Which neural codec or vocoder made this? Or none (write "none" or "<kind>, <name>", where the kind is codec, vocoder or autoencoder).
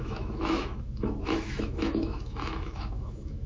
autoencoder, DAC-VAE